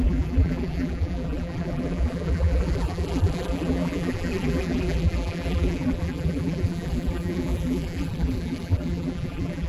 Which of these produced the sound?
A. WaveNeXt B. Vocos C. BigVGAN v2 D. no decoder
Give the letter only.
C